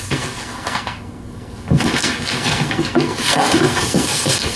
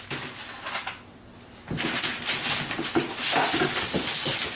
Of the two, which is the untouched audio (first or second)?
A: second